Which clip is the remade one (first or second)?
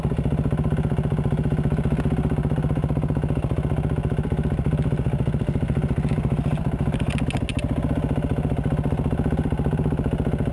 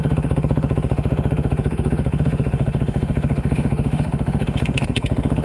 second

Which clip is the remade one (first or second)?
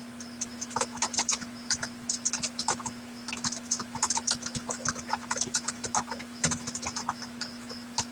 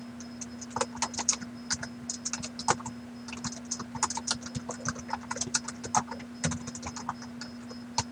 first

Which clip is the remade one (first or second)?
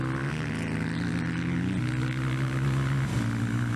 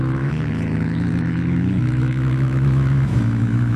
second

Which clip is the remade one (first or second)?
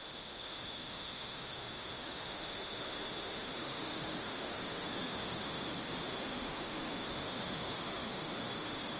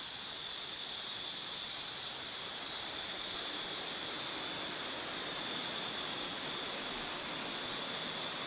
first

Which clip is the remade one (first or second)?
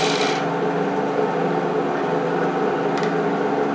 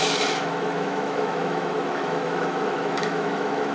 second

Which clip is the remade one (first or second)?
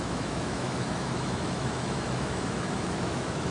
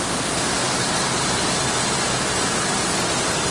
first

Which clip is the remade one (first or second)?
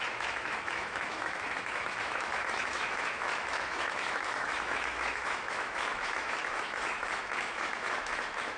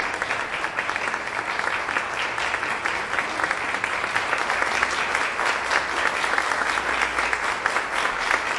first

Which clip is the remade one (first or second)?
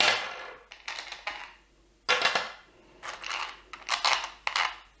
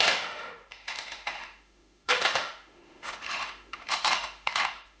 second